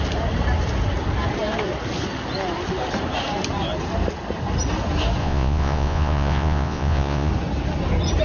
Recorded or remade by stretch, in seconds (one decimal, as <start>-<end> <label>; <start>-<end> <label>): 0.0-5.2 recorded; 5.2-7.3 remade; 7.3-8.2 recorded